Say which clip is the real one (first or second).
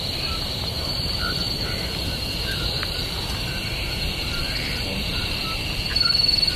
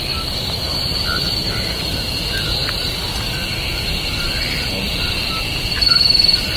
second